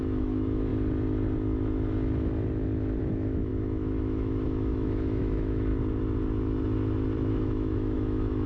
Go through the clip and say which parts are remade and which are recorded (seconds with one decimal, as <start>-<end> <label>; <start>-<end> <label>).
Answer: 0.0-0.7 remade; 0.7-3.0 recorded; 3.0-5.7 remade; 5.7-7.3 recorded; 7.3-8.5 remade